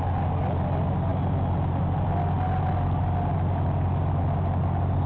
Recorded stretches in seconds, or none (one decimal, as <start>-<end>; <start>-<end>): 0.0-5.1

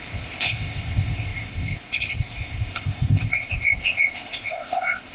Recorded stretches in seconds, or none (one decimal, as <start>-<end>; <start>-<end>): none

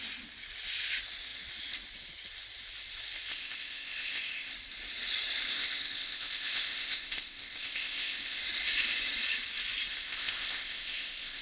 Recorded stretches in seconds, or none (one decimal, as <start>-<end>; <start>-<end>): 0.0-3.3; 4.5-5.5; 8.4-9.9

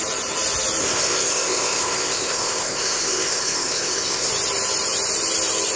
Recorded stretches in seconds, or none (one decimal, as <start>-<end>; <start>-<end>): 0.0-0.8; 4.3-5.8

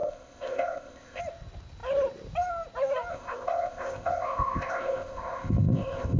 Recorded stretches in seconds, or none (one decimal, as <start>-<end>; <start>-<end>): 1.2-3.1

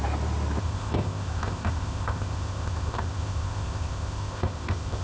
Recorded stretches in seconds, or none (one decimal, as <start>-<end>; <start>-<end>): 0.0-0.6

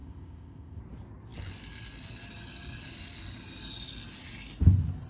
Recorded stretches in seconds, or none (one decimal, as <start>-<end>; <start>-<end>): 0.8-5.1

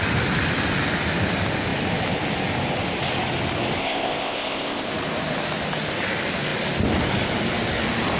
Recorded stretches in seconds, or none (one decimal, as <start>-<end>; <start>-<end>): 0.0-3.8; 4.9-8.2